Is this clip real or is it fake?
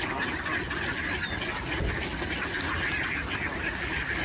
real